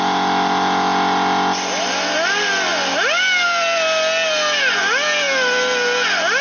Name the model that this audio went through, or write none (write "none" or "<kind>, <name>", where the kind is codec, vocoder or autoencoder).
none